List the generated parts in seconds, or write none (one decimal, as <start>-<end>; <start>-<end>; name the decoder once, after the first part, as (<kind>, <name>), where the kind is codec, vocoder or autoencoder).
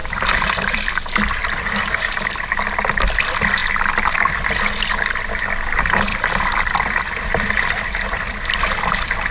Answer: 0.0-0.9 (vocoder, BigVGAN v2); 1.4-2.4; 6.1-9.3